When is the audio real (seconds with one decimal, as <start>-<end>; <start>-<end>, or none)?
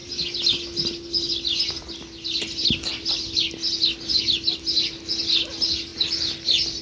0.0-6.8